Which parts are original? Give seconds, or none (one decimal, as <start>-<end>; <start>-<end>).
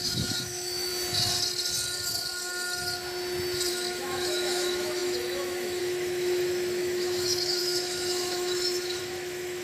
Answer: 0.9-3.7